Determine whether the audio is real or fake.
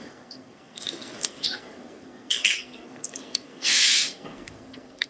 fake